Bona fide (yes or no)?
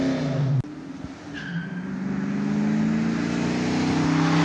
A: yes